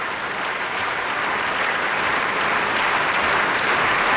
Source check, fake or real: real